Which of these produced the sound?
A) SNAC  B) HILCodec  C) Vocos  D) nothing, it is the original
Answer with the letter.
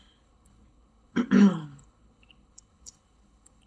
B